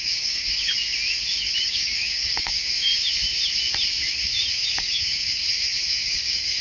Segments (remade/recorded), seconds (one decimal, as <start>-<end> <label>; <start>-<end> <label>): 0.0-0.7 remade; 0.7-1.6 recorded; 1.6-2.9 remade; 2.9-4.5 recorded; 4.5-5.4 remade; 5.4-5.9 recorded; 5.9-6.6 remade